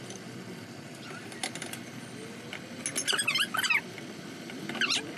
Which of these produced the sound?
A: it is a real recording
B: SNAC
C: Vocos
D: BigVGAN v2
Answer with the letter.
A